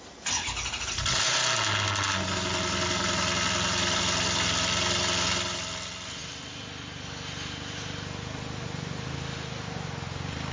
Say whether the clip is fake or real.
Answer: real